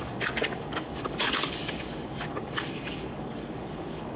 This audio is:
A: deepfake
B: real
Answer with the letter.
A